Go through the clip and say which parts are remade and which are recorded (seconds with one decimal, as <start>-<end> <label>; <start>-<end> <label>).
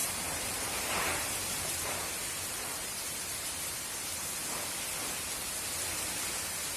0.0-3.6 remade; 3.6-6.8 recorded